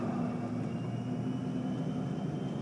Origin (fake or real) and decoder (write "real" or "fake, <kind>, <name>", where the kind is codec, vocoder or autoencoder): real